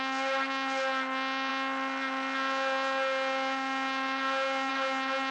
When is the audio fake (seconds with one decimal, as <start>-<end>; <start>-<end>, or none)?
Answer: none